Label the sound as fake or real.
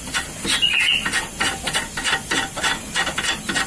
real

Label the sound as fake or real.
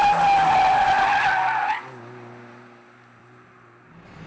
real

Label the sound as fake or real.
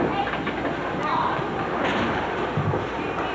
real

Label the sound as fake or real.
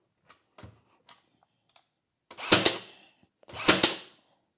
real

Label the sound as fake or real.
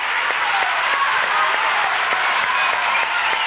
real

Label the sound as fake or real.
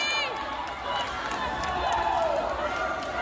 real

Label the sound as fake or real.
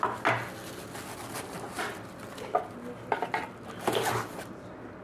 real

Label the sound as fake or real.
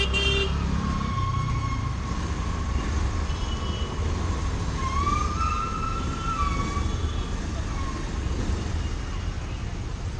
real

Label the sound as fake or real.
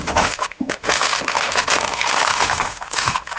fake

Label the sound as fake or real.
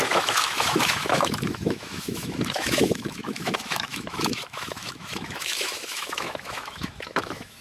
fake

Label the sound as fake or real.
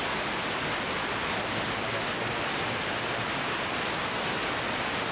real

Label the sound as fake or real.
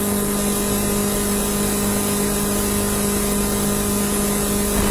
real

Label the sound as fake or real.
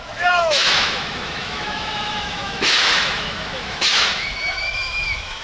fake